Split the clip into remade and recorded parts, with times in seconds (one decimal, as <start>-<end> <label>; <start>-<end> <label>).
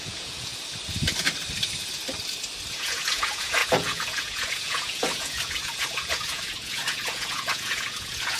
0.0-0.5 remade; 0.5-2.7 recorded; 2.7-8.4 remade